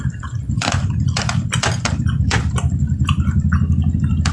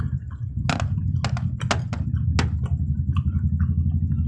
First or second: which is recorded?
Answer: second